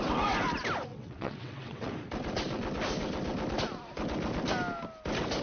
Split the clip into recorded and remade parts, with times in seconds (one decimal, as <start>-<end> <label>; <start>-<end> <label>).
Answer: 0.0-0.9 recorded; 0.9-1.9 remade; 1.9-5.4 recorded